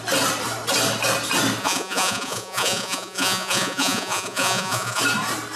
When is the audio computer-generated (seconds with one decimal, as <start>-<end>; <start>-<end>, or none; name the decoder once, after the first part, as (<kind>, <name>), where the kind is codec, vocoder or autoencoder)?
1.6-5.0 (vocoder, Vocos)